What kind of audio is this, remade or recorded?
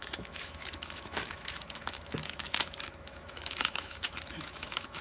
remade